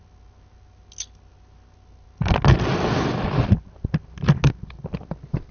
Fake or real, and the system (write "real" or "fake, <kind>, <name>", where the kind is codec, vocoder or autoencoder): real